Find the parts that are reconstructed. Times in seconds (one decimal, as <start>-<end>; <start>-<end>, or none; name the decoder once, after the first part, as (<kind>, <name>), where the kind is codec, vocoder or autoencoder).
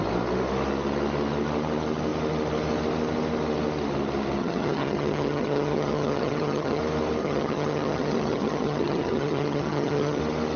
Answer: 4.4-6.8 (vocoder, HiFi-GAN); 7.2-10.2